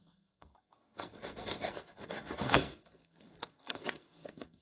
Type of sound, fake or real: fake